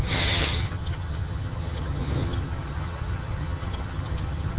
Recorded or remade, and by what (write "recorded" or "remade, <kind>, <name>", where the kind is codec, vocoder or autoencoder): remade, vocoder, HiFi-GAN